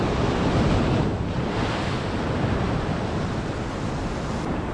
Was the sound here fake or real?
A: real